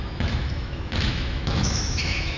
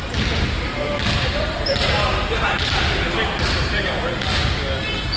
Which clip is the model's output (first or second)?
first